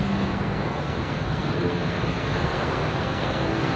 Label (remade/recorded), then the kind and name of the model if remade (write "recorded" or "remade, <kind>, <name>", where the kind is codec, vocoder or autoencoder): remade, codec, SNAC